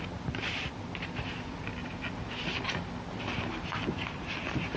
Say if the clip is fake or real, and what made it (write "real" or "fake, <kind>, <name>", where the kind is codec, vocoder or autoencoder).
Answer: real